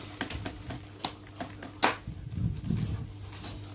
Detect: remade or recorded recorded